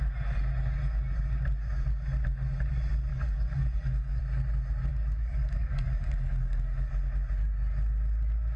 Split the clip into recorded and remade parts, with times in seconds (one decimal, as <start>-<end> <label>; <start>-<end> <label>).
0.0-3.1 recorded; 3.1-4.2 remade; 4.2-4.9 recorded; 4.9-6.9 remade; 6.9-8.6 recorded